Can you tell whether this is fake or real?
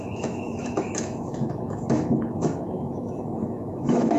fake